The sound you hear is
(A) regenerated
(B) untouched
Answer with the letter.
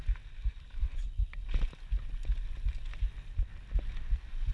B